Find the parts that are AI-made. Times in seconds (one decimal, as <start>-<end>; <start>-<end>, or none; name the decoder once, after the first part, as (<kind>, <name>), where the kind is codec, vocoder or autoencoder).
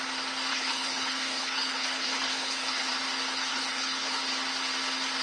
0.5-2.9 (codec, HILCodec); 3.5-4.2